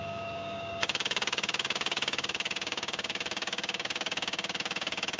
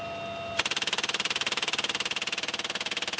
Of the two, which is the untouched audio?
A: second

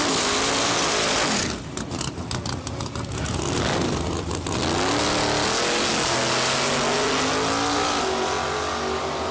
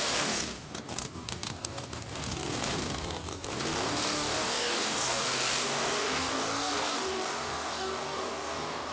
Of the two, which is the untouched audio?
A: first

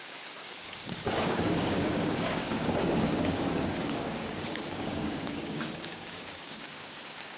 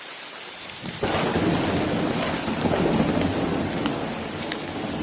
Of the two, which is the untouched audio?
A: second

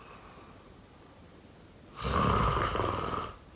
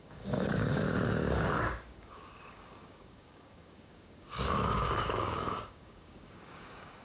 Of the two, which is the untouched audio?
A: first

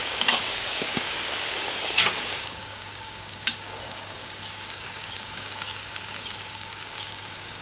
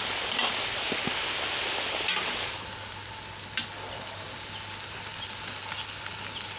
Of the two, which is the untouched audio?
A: second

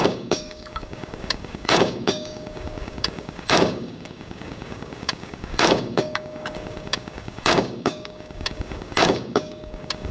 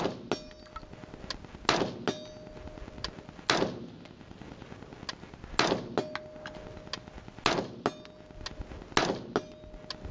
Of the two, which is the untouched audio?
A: second